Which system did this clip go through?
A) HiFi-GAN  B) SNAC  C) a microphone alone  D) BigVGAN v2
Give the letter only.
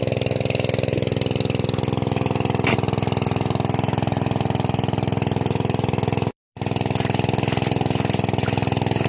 C